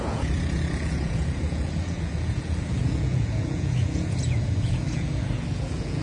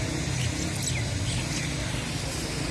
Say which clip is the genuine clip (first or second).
second